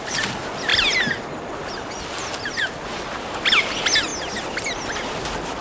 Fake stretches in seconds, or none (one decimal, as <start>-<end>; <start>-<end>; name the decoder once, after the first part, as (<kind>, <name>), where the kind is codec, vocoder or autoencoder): none